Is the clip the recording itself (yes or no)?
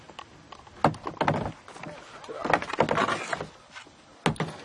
yes